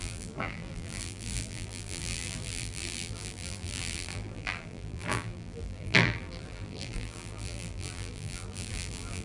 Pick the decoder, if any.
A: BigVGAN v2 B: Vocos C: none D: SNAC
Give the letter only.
A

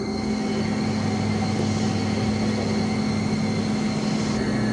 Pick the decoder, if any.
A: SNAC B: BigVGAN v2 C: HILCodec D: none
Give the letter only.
D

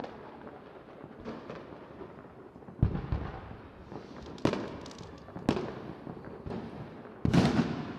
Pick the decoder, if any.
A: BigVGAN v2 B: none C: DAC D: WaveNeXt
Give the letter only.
B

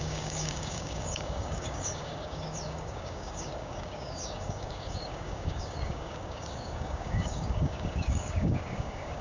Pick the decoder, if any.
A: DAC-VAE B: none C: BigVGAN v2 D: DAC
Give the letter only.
D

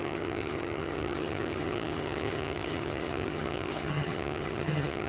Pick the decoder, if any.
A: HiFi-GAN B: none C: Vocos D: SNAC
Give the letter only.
A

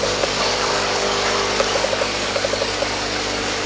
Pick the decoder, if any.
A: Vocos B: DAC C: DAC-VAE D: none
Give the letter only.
B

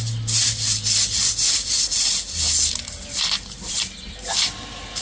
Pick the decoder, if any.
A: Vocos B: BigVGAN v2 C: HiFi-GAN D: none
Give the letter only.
D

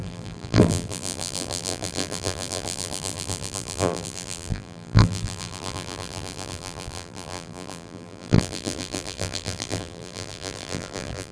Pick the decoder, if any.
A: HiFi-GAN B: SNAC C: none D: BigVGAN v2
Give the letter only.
D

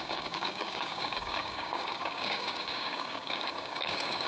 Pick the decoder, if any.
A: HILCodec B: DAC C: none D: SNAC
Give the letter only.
B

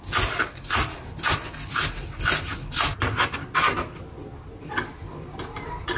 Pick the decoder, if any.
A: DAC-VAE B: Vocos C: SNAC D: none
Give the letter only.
D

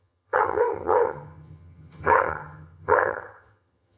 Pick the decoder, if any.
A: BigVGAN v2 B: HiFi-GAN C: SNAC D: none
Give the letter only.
B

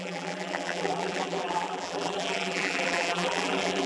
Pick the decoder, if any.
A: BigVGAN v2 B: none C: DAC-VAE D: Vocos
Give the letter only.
A